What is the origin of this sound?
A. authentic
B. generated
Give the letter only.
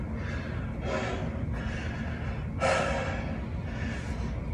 A